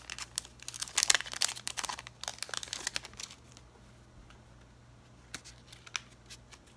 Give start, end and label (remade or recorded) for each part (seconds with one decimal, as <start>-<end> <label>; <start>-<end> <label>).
0.0-6.8 recorded